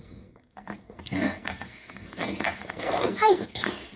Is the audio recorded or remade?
remade